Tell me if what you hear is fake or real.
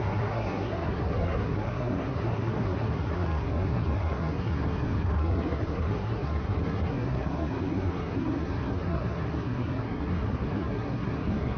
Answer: fake